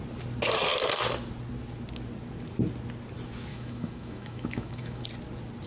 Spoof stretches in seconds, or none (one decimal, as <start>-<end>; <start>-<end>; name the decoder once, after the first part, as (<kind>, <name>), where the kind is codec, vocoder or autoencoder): 3.5-5.0 (autoencoder, DAC-VAE)